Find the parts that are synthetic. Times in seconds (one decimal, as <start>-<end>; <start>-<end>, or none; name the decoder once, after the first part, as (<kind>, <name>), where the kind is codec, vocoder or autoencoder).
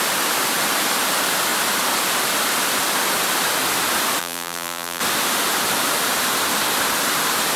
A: 4.2-5.0 (vocoder, BigVGAN v2)